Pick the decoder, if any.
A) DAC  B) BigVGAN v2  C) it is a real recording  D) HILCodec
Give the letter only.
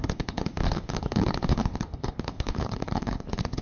D